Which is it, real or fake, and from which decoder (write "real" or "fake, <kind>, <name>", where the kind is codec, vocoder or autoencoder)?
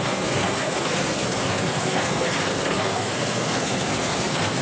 fake, codec, SNAC